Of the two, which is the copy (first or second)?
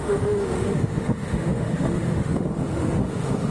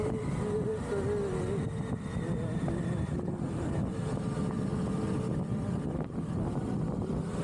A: first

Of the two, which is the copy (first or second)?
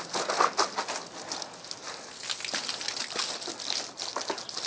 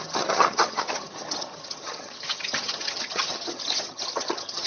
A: second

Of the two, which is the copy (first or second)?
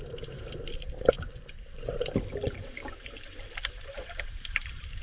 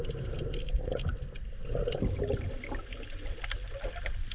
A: first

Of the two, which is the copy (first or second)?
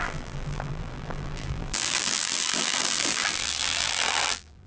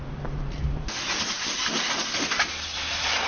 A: first